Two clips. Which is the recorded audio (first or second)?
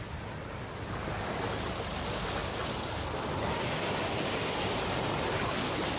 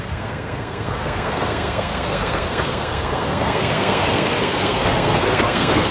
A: first